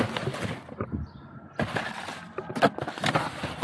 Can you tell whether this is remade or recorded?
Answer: recorded